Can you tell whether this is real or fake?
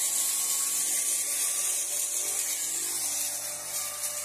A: real